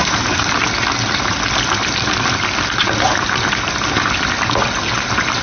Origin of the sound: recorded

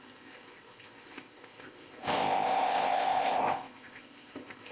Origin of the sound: remade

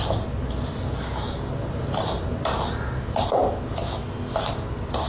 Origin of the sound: recorded